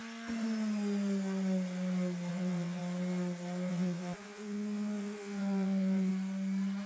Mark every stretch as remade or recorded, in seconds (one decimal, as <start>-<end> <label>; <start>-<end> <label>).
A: 0.0-2.3 recorded; 2.3-2.8 remade; 2.8-3.7 recorded; 3.7-6.1 remade; 6.1-6.9 recorded